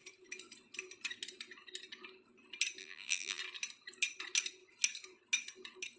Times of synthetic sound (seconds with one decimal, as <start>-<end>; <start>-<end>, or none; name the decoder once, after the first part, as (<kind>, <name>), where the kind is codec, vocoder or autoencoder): 2.8-3.4 (vocoder, BigVGAN v2)